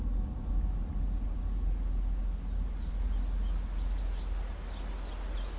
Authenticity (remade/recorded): recorded